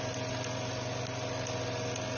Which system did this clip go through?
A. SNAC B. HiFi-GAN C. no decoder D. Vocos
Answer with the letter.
C